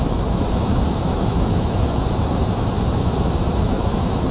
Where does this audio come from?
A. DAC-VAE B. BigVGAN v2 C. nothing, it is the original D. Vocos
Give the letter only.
A